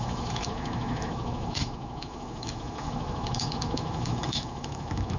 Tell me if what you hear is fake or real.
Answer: fake